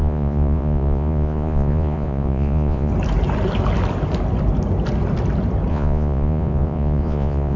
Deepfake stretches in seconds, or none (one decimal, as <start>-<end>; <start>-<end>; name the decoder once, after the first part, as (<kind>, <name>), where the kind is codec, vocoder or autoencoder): 0.0-2.9 (vocoder, Vocos); 5.7-7.6